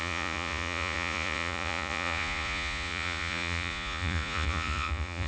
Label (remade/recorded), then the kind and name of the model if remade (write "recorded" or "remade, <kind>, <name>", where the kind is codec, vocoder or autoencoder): remade, vocoder, Vocos